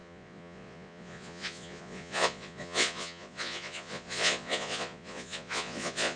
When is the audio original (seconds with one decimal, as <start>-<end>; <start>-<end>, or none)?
none